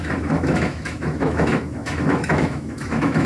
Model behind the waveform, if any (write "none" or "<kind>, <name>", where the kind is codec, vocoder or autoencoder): autoencoder, DAC-VAE